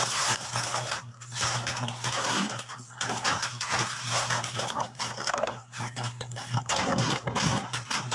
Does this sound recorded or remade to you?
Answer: remade